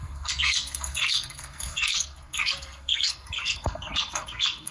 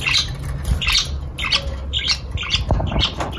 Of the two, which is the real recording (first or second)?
second